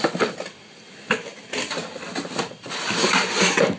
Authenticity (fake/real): real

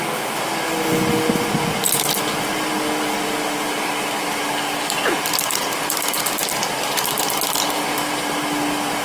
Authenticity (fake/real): real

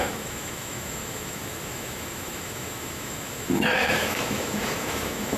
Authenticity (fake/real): fake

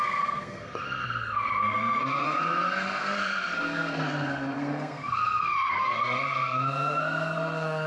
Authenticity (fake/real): fake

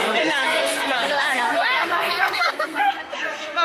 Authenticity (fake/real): fake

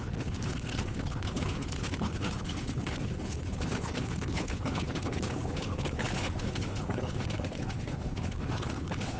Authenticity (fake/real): fake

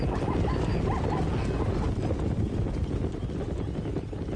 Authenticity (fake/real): real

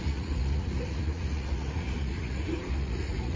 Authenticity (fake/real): fake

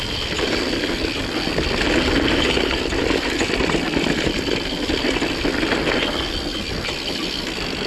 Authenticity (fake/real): real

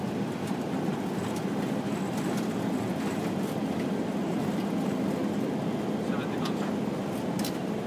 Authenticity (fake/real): real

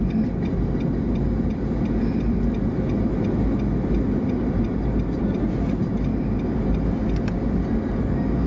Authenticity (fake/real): real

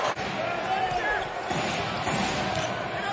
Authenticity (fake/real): real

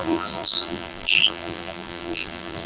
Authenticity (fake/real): fake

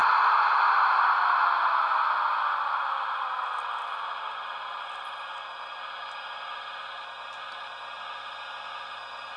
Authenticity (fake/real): real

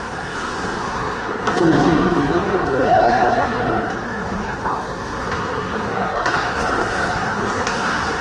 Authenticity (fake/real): fake